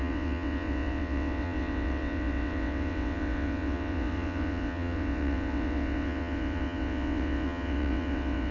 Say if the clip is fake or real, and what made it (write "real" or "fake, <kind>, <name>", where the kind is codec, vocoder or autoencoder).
fake, vocoder, WaveNeXt